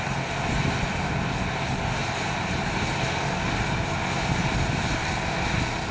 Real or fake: real